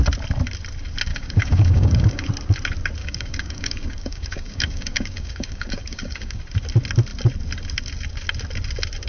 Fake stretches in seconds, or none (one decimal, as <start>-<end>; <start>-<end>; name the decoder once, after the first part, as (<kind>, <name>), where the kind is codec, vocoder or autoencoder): 1.1-2.3 (codec, DAC); 3.0-6.4